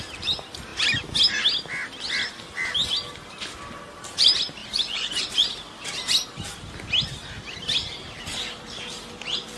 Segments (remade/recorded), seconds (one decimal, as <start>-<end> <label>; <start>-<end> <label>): 0.0-4.6 recorded; 4.6-5.5 remade; 5.5-9.6 recorded

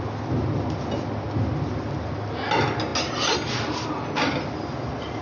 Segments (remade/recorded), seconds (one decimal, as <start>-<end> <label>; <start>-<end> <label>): 0.0-5.2 recorded

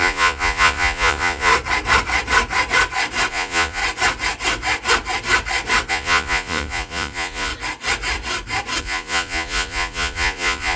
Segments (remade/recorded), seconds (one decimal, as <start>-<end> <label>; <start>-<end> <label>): 0.0-1.5 remade; 1.5-3.3 recorded; 3.3-3.8 remade; 3.8-5.9 recorded; 5.9-7.5 remade; 7.5-8.8 recorded; 8.8-10.8 remade

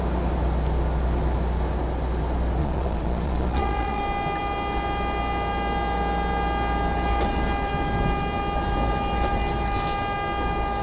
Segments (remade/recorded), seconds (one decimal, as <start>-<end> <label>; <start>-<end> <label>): 0.0-2.6 recorded; 2.6-4.0 remade; 4.0-10.8 recorded

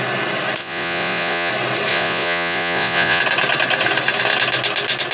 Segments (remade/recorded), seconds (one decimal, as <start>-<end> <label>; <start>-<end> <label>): 0.0-0.6 recorded; 0.6-1.5 remade; 1.5-1.9 recorded; 1.9-3.2 remade; 3.2-5.1 recorded

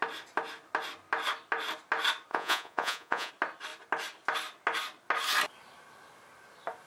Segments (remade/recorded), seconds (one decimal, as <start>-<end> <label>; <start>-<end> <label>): 0.0-2.3 recorded; 2.3-3.3 remade; 3.3-6.9 recorded

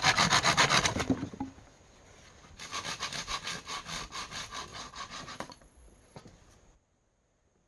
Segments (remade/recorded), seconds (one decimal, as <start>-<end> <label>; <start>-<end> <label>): 0.0-4.7 recorded; 4.7-6.2 remade; 6.2-7.7 recorded